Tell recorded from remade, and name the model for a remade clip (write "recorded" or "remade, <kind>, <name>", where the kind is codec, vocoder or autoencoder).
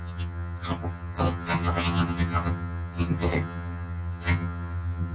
remade, vocoder, HiFi-GAN